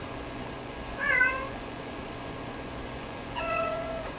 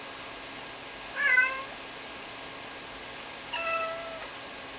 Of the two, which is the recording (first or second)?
second